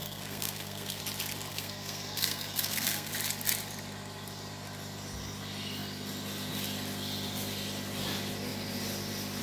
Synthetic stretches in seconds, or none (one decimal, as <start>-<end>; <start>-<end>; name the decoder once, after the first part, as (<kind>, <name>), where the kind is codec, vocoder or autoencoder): 0.0-1.0 (codec, SNAC); 1.5-3.1